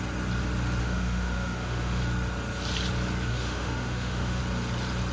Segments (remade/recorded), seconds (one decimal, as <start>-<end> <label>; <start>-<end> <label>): 0.0-0.8 recorded; 0.8-2.0 remade; 2.0-3.3 recorded; 3.3-4.4 remade; 4.4-5.1 recorded